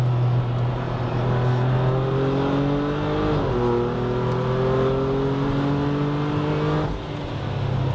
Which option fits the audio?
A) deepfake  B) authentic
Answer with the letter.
B